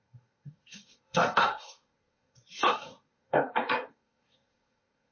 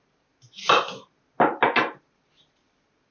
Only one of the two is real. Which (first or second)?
second